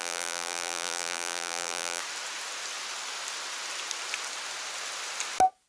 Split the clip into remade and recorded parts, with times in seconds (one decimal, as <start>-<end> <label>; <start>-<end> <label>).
0.0-2.0 remade; 2.0-5.7 recorded